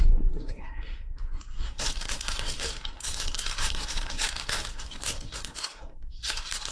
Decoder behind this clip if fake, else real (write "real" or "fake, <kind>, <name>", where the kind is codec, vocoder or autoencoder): fake, codec, SNAC